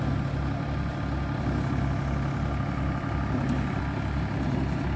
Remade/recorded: recorded